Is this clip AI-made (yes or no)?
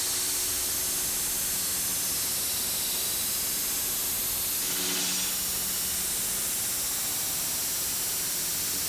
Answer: no